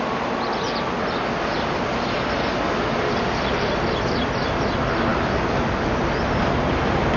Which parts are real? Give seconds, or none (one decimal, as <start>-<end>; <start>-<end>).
0.0-7.2